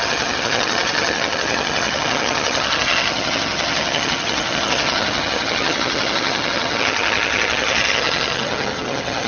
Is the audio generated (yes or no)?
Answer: yes